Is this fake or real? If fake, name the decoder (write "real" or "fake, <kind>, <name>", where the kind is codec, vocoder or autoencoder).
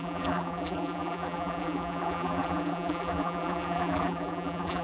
fake, vocoder, BigVGAN v2